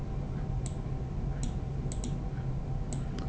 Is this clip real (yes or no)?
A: yes